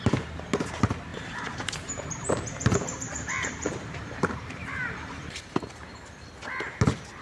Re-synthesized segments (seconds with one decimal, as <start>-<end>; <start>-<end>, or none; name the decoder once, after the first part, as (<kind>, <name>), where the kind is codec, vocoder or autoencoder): 1.1-5.4 (vocoder, BigVGAN v2)